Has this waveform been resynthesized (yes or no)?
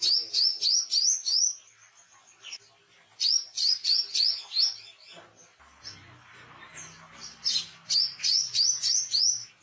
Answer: no